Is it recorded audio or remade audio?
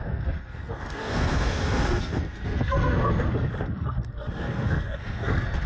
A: remade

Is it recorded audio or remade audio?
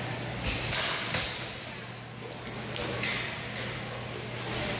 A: recorded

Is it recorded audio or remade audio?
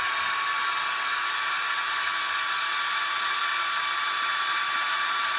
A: recorded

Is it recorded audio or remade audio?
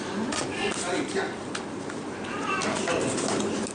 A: recorded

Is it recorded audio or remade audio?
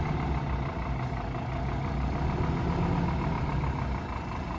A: recorded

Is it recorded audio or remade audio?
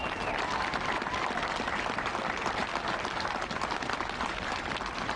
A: recorded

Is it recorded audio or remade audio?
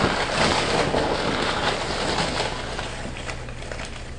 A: recorded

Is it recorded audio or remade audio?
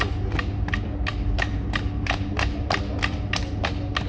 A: recorded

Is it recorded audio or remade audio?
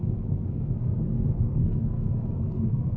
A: remade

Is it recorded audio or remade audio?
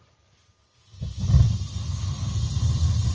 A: recorded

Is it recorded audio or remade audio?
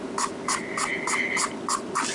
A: recorded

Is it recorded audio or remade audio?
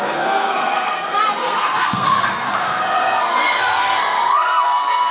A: remade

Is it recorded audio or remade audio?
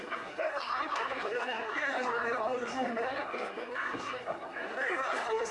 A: remade